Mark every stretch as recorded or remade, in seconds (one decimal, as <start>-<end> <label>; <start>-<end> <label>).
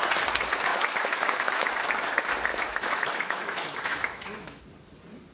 0.0-0.7 recorded; 0.7-1.7 remade; 1.7-2.5 recorded; 2.5-4.6 remade; 4.6-5.3 recorded